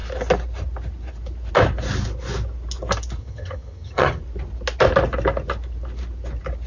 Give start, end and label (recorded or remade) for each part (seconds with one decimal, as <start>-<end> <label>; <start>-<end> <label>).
0.0-3.2 recorded; 3.2-4.2 remade; 4.2-6.7 recorded